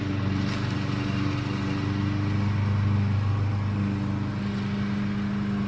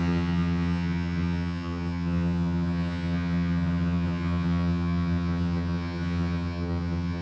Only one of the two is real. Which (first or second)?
first